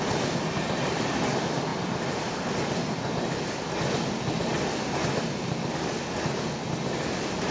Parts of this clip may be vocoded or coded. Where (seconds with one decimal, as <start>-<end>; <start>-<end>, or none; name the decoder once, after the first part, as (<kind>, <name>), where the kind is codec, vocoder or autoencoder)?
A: none